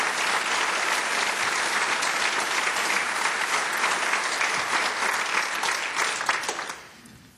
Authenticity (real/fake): real